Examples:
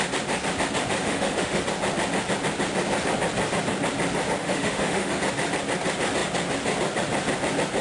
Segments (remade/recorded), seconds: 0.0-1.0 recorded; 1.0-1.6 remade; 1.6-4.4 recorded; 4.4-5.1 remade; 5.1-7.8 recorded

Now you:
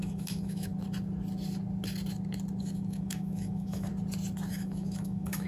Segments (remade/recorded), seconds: 0.0-0.7 remade; 0.7-2.6 recorded; 2.6-3.9 remade; 3.9-4.5 recorded; 4.5-5.5 remade

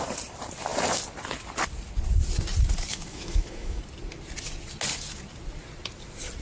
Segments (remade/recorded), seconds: 0.0-2.9 recorded; 2.9-3.8 remade; 3.8-6.4 recorded

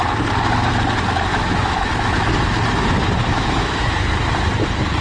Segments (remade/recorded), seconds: 0.0-1.3 recorded; 1.3-2.3 remade; 2.3-3.3 recorded; 3.3-3.8 remade; 3.8-5.0 recorded

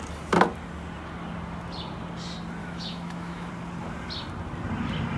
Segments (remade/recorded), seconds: 0.0-2.6 recorded; 2.6-3.5 remade; 3.5-5.2 recorded

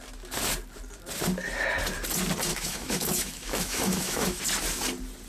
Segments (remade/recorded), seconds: 0.0-2.5 recorded; 2.5-4.4 remade; 4.4-5.3 recorded

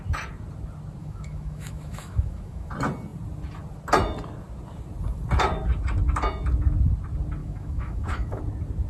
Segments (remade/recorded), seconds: 0.0-1.0 recorded; 1.0-2.7 remade; 2.7-7.4 recorded; 7.4-8.4 remade; 8.4-8.9 recorded